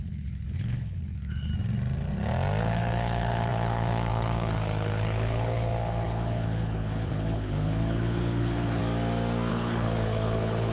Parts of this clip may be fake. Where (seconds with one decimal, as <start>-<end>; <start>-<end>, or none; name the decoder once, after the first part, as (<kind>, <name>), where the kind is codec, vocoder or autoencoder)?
0.0-1.5 (codec, HILCodec); 2.6-8.8; 9.5-10.7